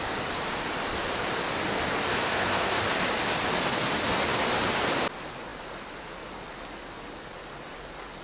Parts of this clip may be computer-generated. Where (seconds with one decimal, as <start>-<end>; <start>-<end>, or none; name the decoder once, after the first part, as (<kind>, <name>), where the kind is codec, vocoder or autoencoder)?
2.1-2.8 (codec, SNAC)